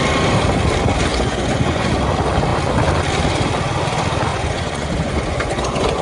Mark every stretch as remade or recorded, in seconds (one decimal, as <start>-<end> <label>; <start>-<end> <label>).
0.0-1.1 recorded; 1.1-2.0 remade; 2.0-4.3 recorded; 4.3-6.0 remade

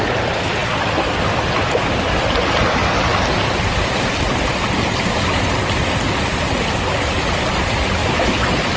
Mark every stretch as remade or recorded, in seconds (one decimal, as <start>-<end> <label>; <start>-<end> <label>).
0.0-8.8 recorded

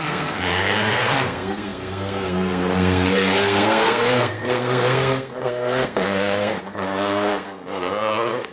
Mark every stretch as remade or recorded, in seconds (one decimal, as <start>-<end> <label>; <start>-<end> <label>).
0.0-8.5 remade

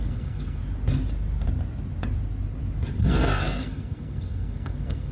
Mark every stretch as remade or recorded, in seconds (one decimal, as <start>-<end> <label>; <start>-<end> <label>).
0.0-0.6 remade; 0.6-3.0 recorded; 3.0-5.1 remade

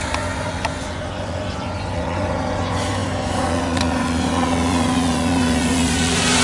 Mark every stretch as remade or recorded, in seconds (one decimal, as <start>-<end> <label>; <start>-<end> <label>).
0.0-6.4 remade

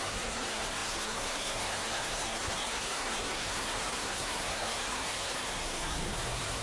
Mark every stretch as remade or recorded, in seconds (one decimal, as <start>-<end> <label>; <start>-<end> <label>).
0.0-6.6 remade